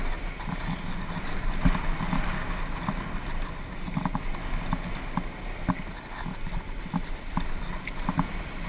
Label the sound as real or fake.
real